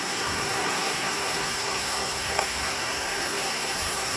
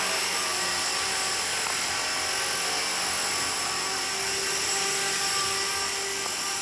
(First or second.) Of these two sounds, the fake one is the first